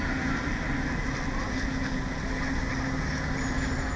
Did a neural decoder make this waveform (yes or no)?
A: no